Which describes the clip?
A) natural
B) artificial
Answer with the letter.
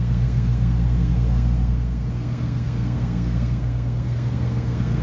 B